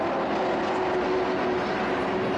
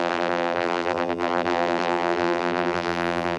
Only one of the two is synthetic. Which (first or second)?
second